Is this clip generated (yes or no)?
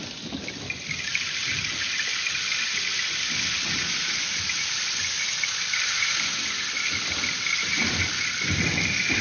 no